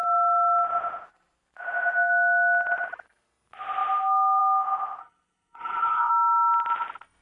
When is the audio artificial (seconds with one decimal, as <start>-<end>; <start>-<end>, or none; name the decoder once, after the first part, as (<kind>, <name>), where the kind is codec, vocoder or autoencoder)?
5.0-6.1 (codec, HILCodec)